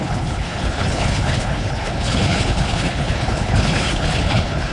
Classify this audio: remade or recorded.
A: remade